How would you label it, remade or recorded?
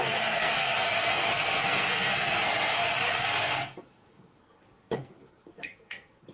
remade